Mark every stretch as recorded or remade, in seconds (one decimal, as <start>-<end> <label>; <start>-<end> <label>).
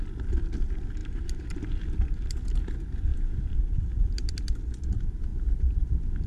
0.0-1.0 recorded; 1.0-1.6 remade; 1.6-3.1 recorded; 3.1-4.3 remade; 4.3-6.3 recorded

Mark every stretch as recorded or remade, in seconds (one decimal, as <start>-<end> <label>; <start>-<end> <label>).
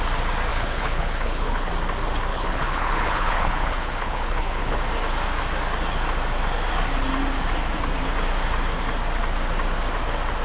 0.0-0.5 recorded; 0.5-1.7 remade; 1.7-2.3 recorded; 2.3-4.8 remade; 4.8-10.4 recorded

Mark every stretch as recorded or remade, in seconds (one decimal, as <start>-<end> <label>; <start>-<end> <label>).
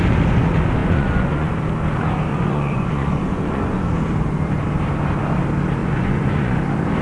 0.0-0.8 recorded; 0.8-1.5 remade; 1.5-2.3 recorded; 2.3-3.8 remade; 3.8-5.8 recorded; 5.8-6.6 remade; 6.6-7.0 recorded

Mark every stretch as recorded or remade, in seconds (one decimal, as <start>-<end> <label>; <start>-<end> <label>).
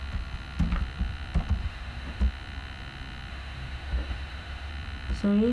0.0-1.6 recorded; 1.6-2.2 remade; 2.2-3.3 recorded; 3.3-4.7 remade; 4.7-5.5 recorded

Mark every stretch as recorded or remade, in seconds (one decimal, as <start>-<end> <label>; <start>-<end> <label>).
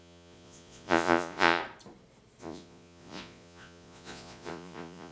0.0-1.6 remade; 1.6-2.4 recorded; 2.4-5.1 remade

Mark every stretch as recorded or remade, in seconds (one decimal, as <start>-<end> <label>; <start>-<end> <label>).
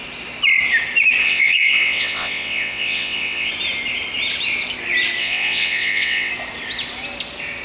0.0-1.2 recorded; 1.2-3.5 remade; 3.5-5.2 recorded; 5.2-6.3 remade; 6.3-7.6 recorded